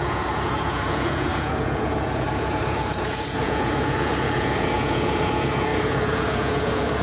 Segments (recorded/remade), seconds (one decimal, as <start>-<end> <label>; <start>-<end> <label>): 0.0-7.0 remade